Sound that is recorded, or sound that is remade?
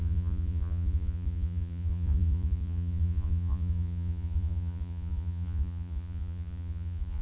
remade